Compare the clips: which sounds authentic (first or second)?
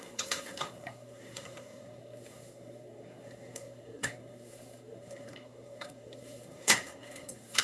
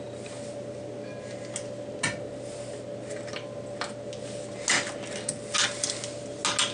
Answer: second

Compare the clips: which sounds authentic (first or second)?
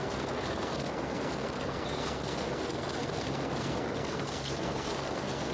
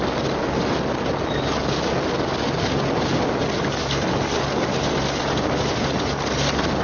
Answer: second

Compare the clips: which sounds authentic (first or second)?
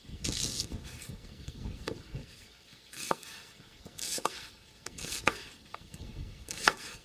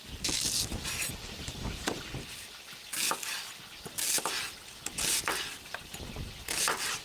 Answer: second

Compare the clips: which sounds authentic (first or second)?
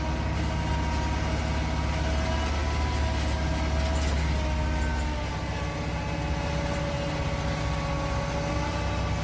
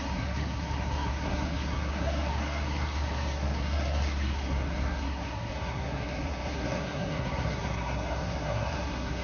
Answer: first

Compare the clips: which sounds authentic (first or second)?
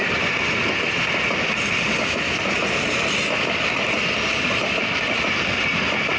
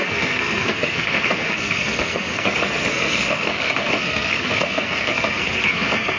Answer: first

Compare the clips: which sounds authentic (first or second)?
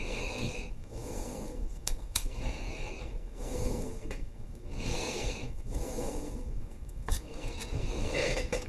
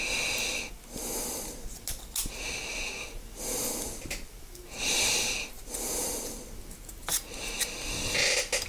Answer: second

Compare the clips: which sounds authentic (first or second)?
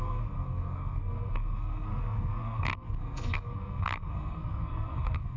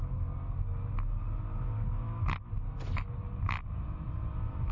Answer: second